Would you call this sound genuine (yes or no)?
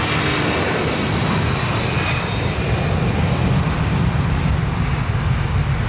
yes